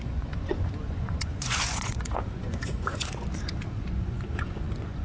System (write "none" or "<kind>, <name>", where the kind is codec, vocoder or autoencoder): vocoder, Vocos